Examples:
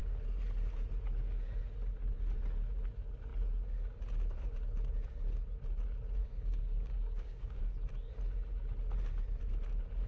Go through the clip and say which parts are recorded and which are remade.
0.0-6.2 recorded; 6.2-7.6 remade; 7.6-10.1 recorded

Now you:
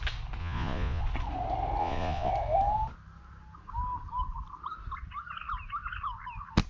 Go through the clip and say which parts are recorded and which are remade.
0.0-0.4 recorded; 0.4-1.0 remade; 1.0-1.8 recorded; 1.8-2.3 remade; 2.3-6.7 recorded

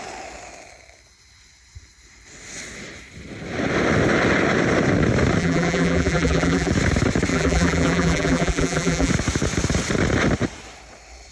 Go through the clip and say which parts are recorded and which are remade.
0.0-5.4 recorded; 5.4-6.7 remade; 6.7-7.3 recorded; 7.3-9.1 remade; 9.1-11.3 recorded

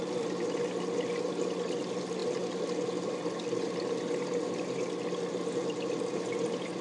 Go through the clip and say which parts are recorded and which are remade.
0.0-6.8 recorded

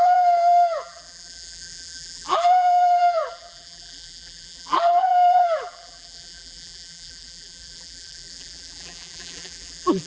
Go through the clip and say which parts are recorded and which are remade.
0.0-10.1 remade